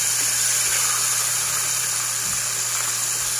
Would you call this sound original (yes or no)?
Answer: yes